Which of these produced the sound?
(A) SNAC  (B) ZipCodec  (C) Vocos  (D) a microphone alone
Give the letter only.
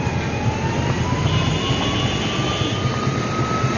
D